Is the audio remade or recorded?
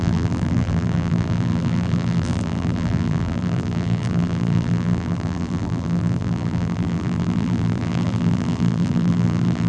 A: remade